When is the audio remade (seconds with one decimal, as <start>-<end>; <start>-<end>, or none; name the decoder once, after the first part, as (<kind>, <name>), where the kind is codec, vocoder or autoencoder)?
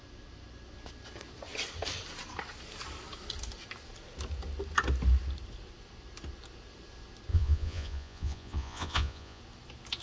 7.3-9.4 (vocoder, Vocos)